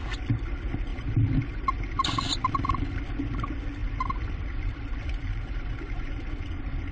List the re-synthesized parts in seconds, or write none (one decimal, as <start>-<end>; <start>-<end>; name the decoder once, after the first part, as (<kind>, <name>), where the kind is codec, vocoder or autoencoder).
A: 0.9-3.0 (vocoder, BigVGAN v2); 3.8-6.4